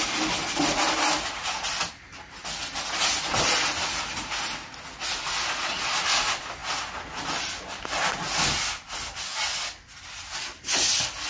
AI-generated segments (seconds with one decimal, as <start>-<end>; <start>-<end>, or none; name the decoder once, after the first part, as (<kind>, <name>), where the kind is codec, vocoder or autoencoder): none